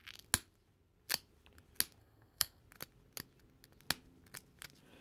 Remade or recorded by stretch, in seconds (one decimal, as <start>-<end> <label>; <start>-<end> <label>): 0.0-2.0 recorded; 2.0-2.6 remade; 2.6-5.0 recorded